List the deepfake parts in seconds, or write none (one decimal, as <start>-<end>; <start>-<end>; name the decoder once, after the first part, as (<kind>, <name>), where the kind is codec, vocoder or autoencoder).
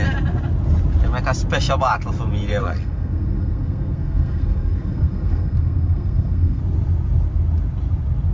2.6-6.6 (codec, SNAC)